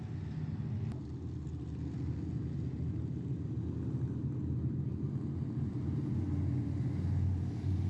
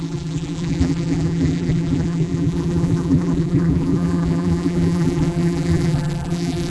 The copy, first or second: second